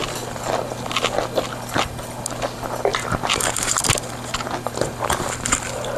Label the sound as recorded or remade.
recorded